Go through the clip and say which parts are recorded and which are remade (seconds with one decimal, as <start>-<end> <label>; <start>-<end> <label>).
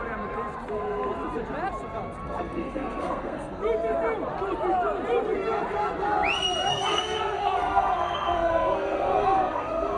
0.0-2.2 recorded; 2.2-3.6 remade; 3.6-6.7 recorded; 6.7-10.0 remade